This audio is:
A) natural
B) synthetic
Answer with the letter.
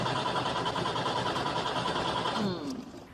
B